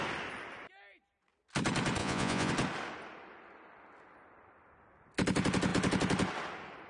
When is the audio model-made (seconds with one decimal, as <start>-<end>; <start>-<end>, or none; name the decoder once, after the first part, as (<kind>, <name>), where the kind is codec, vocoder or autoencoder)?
2.0-2.5 (vocoder, Vocos)